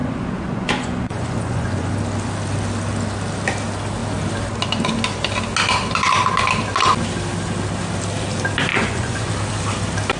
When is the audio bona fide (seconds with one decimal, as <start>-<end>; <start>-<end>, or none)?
1.9-8.7; 9.3-10.2